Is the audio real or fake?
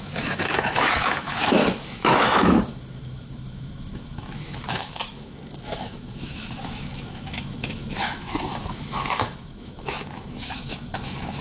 fake